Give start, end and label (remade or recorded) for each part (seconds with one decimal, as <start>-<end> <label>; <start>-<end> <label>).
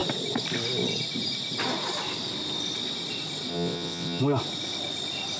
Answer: 0.0-3.5 recorded; 3.5-4.2 remade; 4.2-5.4 recorded